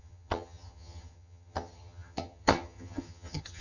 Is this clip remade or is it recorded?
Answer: remade